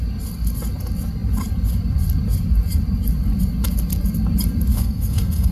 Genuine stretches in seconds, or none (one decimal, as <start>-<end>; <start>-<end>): 0.0-4.7